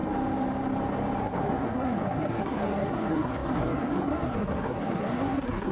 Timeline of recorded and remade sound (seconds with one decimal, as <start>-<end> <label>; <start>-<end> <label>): 0.0-1.2 recorded; 1.2-5.7 remade